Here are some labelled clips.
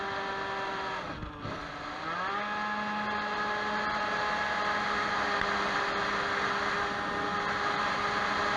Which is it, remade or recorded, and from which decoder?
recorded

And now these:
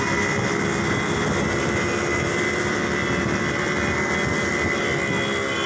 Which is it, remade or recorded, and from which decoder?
recorded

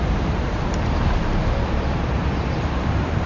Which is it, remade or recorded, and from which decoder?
remade, vocoder, BigVGAN v2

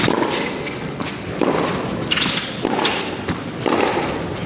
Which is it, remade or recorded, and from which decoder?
recorded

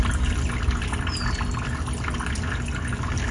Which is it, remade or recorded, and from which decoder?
recorded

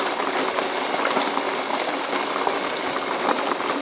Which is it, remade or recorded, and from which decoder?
recorded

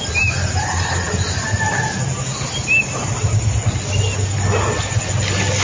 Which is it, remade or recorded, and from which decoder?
recorded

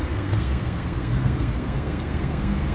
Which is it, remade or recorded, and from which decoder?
remade, codec, SNAC